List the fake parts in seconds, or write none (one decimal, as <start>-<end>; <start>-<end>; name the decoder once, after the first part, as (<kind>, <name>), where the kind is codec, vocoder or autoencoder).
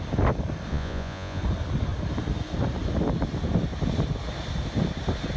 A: 0.7-1.4 (vocoder, Vocos)